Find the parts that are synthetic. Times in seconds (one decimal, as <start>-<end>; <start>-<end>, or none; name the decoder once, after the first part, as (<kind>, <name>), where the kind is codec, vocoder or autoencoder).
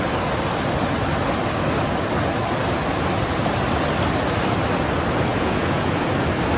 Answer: 5.3-6.1 (vocoder, Vocos)